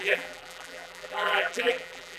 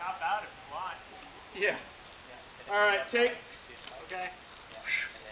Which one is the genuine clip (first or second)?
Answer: second